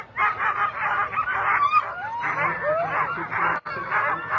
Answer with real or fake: real